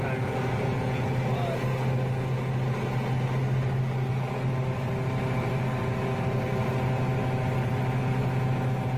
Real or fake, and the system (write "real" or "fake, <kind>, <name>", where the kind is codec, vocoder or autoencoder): real